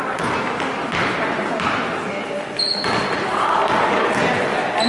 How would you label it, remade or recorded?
recorded